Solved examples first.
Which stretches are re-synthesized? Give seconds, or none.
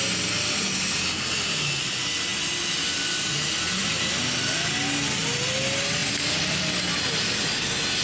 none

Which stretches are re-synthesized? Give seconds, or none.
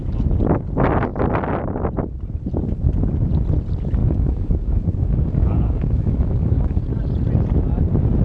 4.0-6.8